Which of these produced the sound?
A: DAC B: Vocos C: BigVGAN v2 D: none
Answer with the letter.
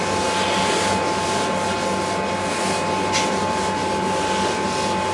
D